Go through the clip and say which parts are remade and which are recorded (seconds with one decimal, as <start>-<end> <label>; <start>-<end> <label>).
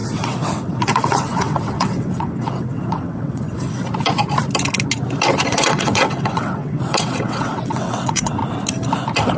0.0-3.8 remade; 3.8-5.5 recorded; 5.5-8.4 remade; 8.4-9.4 recorded